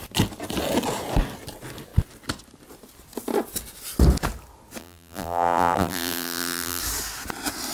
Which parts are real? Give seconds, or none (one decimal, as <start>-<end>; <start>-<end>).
0.0-4.8; 6.8-7.7